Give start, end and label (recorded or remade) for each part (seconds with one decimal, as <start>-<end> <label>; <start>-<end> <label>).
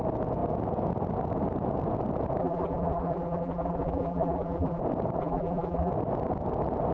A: 0.0-2.4 recorded; 2.4-4.8 remade; 4.8-5.2 recorded; 5.2-5.9 remade; 5.9-6.9 recorded